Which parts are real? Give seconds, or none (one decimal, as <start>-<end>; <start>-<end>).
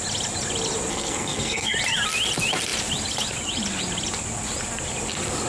0.0-0.9; 1.7-5.5